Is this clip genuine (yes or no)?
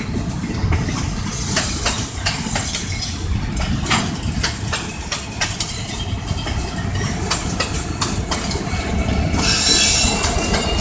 yes